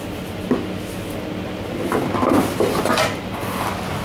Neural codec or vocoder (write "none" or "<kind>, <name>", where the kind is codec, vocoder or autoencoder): none